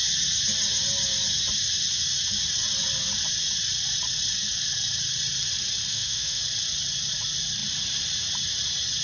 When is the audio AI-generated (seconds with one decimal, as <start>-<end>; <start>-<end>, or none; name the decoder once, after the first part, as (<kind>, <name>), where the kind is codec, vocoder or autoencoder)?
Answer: 5.9-6.4 (autoencoder, DAC-VAE)